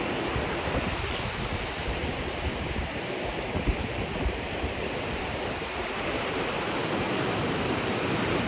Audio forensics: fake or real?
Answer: fake